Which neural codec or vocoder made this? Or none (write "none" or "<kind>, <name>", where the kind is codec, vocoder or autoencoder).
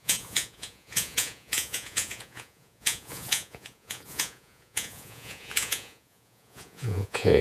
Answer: vocoder, Vocos